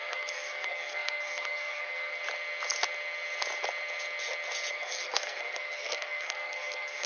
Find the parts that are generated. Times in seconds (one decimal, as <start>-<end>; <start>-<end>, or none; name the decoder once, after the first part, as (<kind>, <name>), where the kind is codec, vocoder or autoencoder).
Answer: 0.0-2.2 (codec, SNAC); 4.7-7.1